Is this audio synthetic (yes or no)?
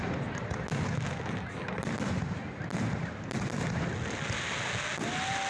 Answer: no